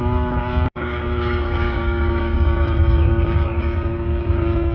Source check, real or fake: fake